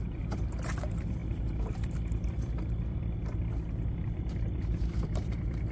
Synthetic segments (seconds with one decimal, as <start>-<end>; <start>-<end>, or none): 0.0-3.0; 3.5-5.7